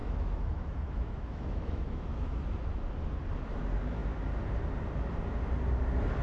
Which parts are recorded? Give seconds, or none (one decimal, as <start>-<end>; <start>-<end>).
2.4-6.2